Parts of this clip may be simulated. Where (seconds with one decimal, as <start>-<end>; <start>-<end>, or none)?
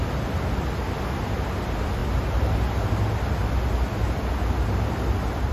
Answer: none